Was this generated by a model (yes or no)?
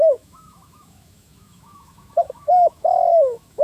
yes